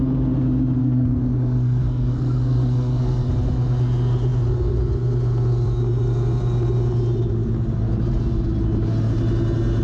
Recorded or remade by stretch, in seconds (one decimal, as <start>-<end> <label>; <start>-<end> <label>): 0.0-0.8 recorded; 0.8-3.3 remade; 3.3-9.8 recorded